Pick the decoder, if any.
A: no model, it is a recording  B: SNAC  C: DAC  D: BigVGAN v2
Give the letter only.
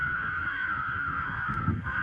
B